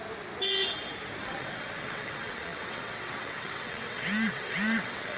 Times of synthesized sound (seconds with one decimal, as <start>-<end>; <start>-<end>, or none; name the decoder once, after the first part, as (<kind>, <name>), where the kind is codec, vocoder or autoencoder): 1.2-5.2 (vocoder, WaveNeXt)